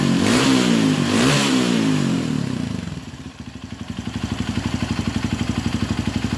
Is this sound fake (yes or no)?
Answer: yes